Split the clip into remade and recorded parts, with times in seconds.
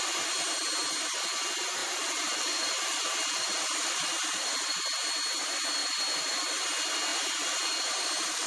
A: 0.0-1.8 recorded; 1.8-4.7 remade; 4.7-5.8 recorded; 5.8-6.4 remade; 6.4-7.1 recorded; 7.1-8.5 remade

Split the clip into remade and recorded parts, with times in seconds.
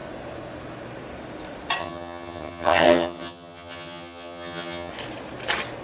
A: 0.0-1.8 recorded; 1.8-4.9 remade; 4.9-5.8 recorded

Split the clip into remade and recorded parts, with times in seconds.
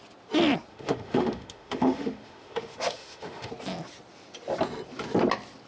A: 0.0-0.7 recorded; 0.7-3.5 remade; 3.5-5.7 recorded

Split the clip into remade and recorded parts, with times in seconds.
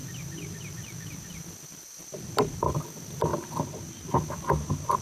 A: 0.0-2.9 remade; 2.9-3.3 recorded; 3.3-4.1 remade; 4.1-5.0 recorded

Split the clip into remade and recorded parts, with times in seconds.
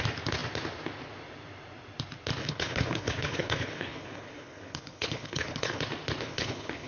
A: 0.0-2.4 recorded; 2.4-5.8 remade; 5.8-6.2 recorded; 6.2-6.9 remade